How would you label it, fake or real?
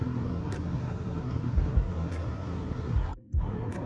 fake